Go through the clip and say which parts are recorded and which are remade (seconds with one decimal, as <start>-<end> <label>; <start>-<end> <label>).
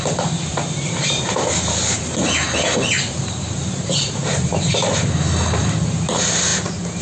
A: 0.0-0.5 recorded; 0.5-4.7 remade; 4.7-7.0 recorded